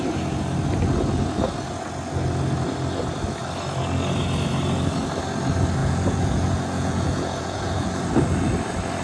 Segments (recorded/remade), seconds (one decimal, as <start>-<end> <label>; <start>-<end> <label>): 0.0-5.8 recorded; 5.8-8.0 remade; 8.0-9.0 recorded